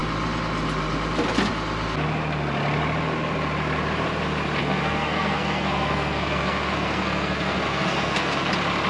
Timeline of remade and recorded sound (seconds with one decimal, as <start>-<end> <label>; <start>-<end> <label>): 0.0-4.6 recorded; 4.6-8.5 remade; 8.5-8.9 recorded